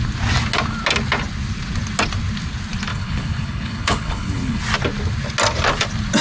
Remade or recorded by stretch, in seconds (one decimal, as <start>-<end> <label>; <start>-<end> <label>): 0.0-2.9 recorded; 2.9-4.6 remade; 4.6-6.2 recorded

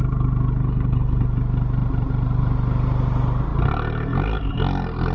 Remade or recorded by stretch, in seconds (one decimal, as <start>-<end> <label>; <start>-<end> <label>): 0.0-0.6 recorded; 0.6-1.2 remade; 1.2-5.1 recorded

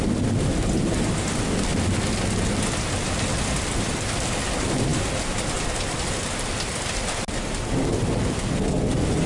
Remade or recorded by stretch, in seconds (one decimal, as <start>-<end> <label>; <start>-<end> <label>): 0.0-9.3 recorded

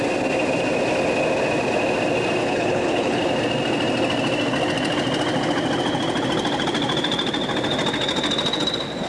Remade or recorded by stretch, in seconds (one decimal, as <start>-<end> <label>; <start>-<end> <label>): 0.0-2.4 recorded; 2.4-3.2 remade; 3.2-9.1 recorded

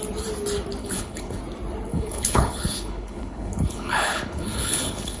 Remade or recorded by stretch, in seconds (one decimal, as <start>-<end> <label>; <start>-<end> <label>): 0.0-0.8 recorded; 0.8-1.4 remade; 1.4-1.9 recorded; 1.9-5.2 remade

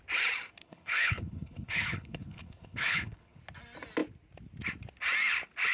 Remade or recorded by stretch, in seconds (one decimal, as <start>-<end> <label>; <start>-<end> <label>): 0.0-0.6 recorded; 0.6-3.4 remade; 3.4-5.7 recorded

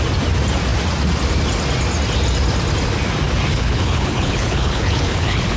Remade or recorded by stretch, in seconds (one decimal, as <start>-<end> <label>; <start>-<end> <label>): 0.0-3.5 recorded; 3.5-5.6 remade

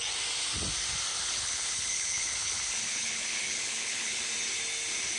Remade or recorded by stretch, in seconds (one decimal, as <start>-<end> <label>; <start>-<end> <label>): 0.0-1.1 recorded; 1.1-4.2 remade; 4.2-5.2 recorded